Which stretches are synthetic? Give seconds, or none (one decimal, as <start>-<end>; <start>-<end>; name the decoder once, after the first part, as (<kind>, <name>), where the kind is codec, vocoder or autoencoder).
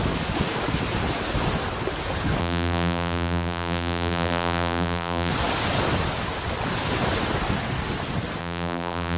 2.4-5.3 (vocoder, BigVGAN v2); 8.4-9.2